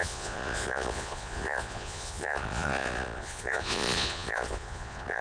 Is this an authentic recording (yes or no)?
no